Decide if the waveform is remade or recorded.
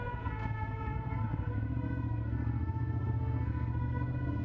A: remade